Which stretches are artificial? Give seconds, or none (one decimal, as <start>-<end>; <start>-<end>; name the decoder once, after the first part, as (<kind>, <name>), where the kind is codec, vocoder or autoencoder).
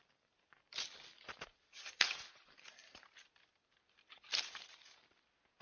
none